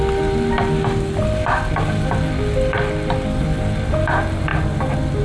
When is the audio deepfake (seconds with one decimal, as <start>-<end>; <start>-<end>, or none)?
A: none